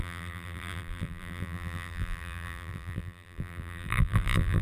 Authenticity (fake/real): fake